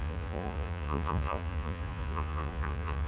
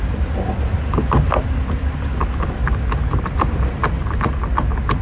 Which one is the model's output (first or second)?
first